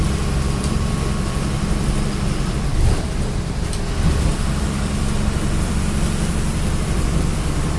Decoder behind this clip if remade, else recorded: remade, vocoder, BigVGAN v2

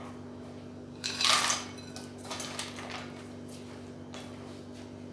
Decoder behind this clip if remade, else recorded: recorded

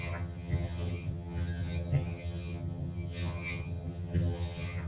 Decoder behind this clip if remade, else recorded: remade, vocoder, HiFi-GAN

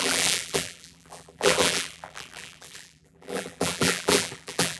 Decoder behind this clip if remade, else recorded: remade, vocoder, BigVGAN v2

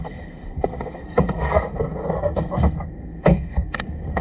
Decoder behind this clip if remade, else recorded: remade, codec, SNAC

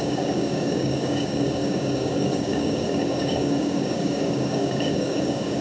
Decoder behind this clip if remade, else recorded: remade, codec, DAC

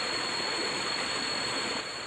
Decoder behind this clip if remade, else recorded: remade, vocoder, Vocos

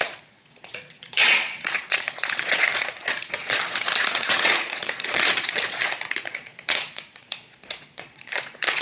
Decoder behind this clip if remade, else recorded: remade, vocoder, Vocos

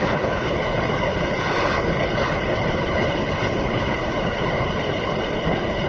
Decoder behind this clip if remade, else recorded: remade, codec, HILCodec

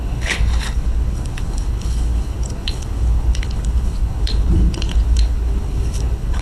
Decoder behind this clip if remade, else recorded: remade, codec, HILCodec